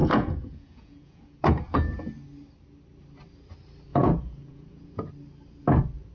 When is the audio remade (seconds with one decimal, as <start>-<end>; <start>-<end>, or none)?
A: 0.0-1.4; 3.9-5.1